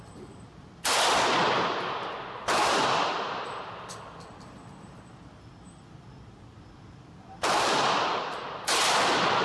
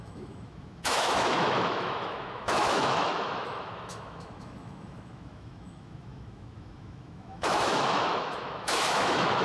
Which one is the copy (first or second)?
second